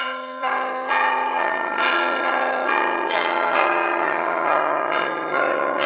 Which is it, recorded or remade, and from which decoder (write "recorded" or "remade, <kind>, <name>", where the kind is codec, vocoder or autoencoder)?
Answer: remade, vocoder, HiFi-GAN